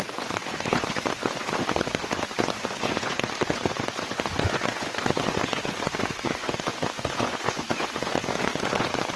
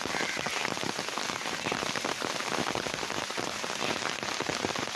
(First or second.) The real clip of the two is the second